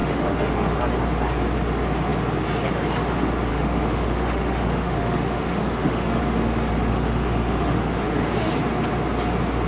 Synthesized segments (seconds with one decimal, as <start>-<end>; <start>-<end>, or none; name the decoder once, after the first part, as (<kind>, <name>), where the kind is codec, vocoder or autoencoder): 0.0-0.8 (autoencoder, DAC-VAE); 3.5-6.2; 6.9-8.3